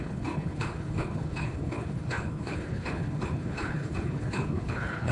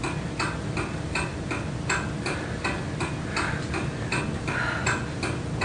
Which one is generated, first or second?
first